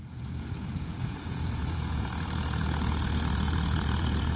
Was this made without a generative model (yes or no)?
no